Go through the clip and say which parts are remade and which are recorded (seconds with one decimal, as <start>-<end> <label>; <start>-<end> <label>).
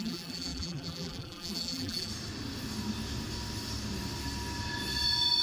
0.0-2.1 remade; 2.1-5.4 recorded